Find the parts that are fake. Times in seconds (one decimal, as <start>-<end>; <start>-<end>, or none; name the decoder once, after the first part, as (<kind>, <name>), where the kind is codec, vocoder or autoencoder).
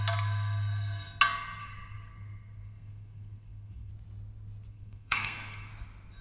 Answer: 1.6-3.9 (codec, SNAC); 4.7-5.7